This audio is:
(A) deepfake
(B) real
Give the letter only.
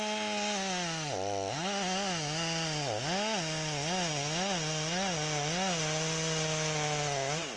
B